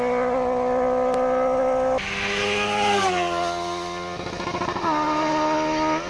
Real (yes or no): yes